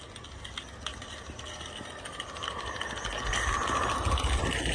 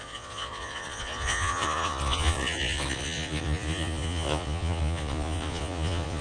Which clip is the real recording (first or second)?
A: first